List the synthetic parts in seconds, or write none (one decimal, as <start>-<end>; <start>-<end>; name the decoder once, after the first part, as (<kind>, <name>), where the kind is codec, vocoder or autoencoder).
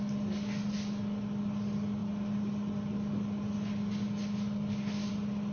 none